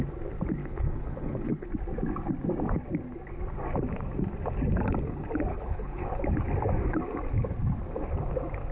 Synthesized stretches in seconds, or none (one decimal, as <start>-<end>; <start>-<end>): 0.6-1.7; 5.5-6.2